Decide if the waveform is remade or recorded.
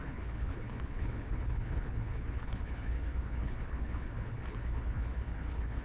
remade